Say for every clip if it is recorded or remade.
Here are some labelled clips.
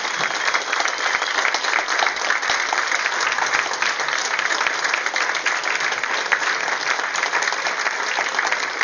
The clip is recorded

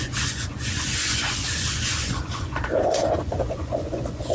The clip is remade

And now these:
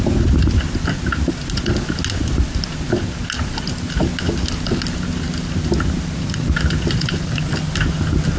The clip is recorded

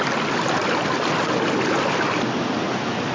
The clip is recorded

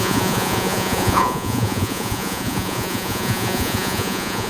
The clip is remade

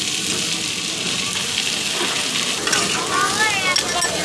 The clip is recorded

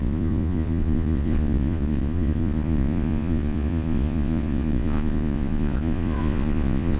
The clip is remade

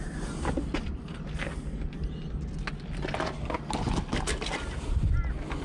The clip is recorded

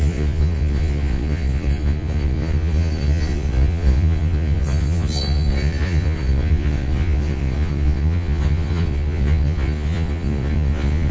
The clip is remade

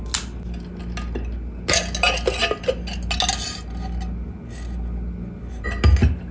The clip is recorded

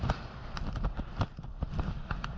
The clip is recorded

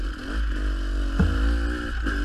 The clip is recorded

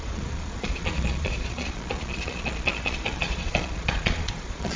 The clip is remade